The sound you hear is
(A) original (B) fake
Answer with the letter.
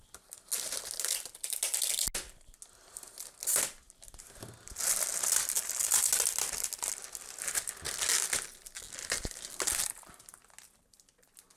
A